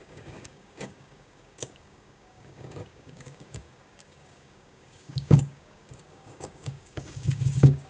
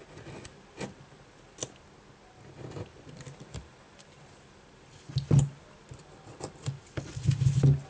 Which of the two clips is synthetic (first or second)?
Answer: first